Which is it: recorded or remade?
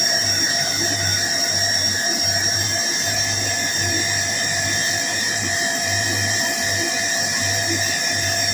remade